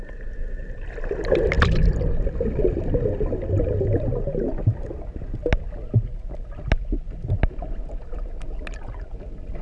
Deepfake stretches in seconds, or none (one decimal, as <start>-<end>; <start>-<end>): none